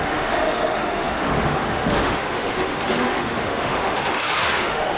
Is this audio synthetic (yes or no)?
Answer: yes